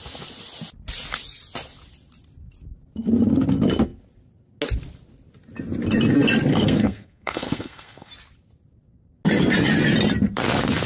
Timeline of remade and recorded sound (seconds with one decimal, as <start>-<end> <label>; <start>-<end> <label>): 0.0-6.5 recorded; 6.5-8.1 remade; 8.1-10.9 recorded